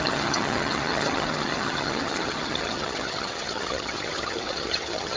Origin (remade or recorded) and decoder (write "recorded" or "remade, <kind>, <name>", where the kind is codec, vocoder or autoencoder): remade, vocoder, HiFi-GAN